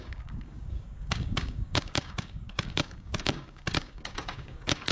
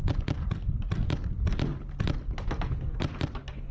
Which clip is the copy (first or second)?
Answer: first